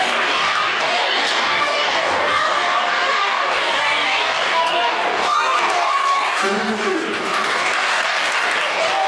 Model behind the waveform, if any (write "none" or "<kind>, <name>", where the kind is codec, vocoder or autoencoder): codec, DAC